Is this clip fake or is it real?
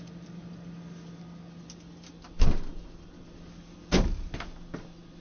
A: real